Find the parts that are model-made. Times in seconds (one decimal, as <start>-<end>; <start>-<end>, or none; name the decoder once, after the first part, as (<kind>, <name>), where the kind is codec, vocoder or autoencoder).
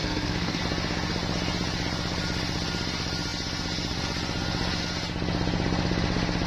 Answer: 0.0-0.6 (codec, SNAC)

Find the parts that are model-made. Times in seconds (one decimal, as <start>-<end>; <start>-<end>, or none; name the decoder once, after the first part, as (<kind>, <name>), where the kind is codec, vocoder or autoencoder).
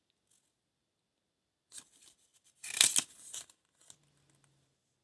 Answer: none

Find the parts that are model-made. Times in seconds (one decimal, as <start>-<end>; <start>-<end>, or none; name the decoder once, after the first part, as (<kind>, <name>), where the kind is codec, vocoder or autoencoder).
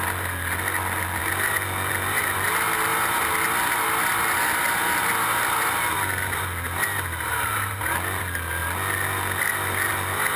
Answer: none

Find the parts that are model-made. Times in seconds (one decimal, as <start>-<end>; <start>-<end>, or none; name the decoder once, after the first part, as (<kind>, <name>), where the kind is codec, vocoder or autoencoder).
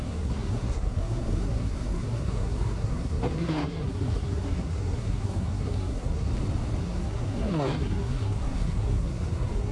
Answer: 0.0-6.3 (codec, SNAC); 6.8-9.7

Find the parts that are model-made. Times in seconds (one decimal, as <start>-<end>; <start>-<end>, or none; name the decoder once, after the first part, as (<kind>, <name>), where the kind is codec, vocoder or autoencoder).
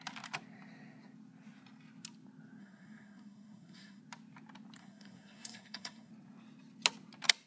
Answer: 2.6-4.0 (codec, SNAC); 4.8-6.1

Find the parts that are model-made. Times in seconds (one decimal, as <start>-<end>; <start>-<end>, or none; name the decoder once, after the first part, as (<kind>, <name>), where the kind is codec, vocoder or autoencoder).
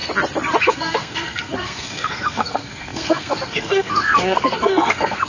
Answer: 0.6-5.3 (codec, SNAC)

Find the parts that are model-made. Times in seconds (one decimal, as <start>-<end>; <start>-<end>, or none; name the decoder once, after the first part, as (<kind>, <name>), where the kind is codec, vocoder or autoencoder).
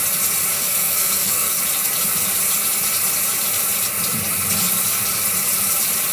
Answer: 0.5-1.6 (codec, SNAC)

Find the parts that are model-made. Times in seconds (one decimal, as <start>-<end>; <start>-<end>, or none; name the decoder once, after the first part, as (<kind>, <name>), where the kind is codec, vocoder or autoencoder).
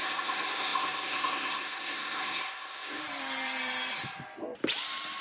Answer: 0.0-3.0 (codec, SNAC)